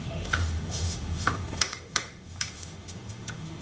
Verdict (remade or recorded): remade